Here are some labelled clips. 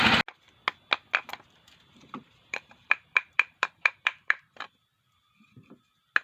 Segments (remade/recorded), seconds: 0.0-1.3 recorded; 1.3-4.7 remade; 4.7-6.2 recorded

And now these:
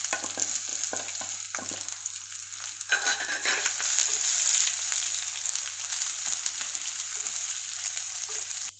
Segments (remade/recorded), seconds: 0.0-8.8 recorded